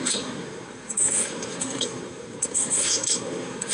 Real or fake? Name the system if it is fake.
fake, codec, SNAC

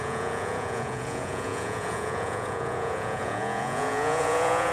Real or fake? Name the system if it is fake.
fake, vocoder, Vocos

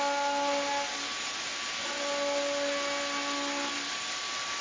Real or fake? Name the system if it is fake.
real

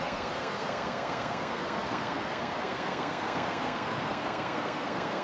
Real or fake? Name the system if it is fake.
fake, codec, SNAC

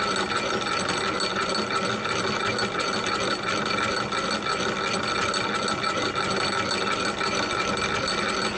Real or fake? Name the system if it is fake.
real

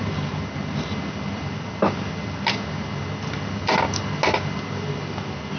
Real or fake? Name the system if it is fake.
real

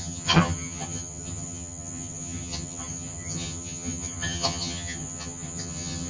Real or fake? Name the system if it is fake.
fake, vocoder, HiFi-GAN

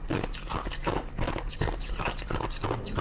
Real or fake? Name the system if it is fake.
real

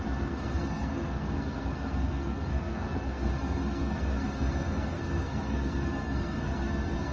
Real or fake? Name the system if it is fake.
fake, codec, SNAC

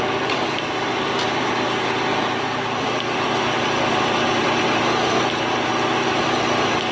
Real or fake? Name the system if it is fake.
fake, vocoder, BigVGAN v2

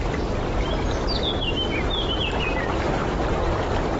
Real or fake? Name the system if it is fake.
real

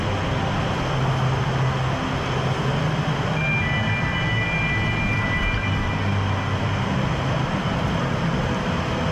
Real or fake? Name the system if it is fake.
real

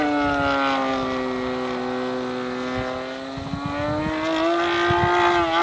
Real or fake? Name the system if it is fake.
real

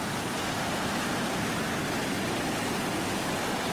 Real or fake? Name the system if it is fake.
real